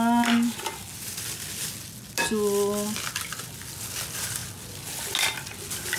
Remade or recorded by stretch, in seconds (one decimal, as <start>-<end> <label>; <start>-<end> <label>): 0.0-6.0 recorded